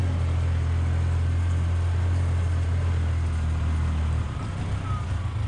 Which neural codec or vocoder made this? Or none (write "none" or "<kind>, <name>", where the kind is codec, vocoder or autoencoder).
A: none